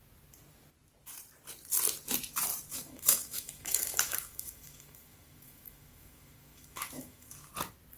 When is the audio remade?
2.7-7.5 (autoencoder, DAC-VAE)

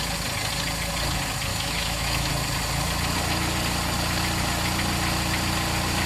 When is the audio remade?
1.5-2.3 (autoencoder, DAC-VAE)